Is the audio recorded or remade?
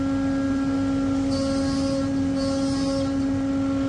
recorded